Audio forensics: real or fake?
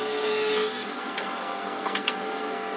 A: fake